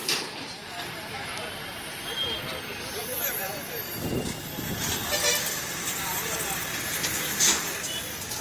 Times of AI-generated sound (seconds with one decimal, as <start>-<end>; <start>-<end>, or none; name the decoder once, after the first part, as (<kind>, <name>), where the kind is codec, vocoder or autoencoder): none